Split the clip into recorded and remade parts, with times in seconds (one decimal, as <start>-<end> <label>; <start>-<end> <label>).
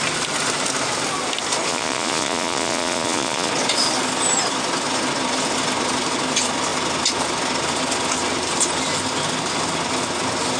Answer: 0.0-1.7 recorded; 1.7-3.5 remade; 3.5-10.6 recorded